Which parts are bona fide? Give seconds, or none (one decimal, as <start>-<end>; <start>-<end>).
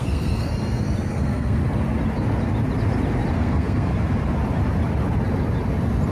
0.5-1.1; 1.6-3.3; 3.9-6.1